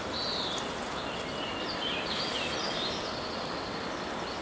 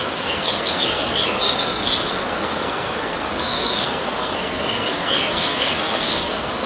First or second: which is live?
first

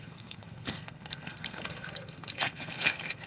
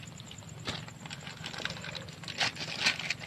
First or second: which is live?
second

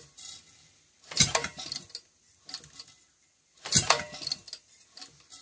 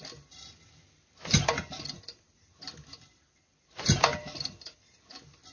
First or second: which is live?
first